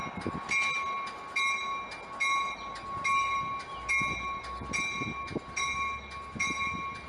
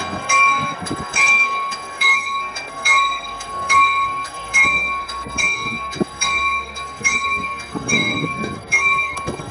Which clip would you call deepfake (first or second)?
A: second